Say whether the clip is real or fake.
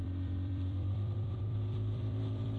fake